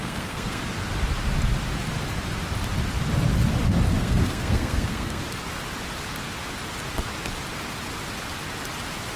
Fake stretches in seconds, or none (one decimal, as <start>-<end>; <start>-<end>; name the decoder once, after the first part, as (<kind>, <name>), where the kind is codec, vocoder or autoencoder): 0.0-0.6 (codec, SNAC); 4.0-5.2